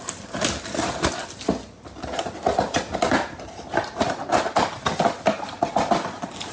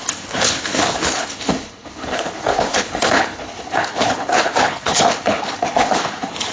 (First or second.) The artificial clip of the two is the second